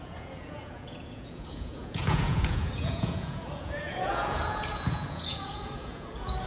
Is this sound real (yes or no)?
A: no